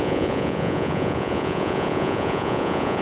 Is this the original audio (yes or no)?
no